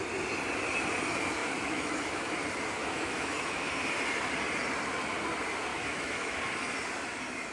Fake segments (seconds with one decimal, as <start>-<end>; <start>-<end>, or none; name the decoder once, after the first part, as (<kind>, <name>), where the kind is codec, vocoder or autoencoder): 1.4-2.3 (autoencoder, DAC-VAE); 2.8-3.7; 5.7-6.4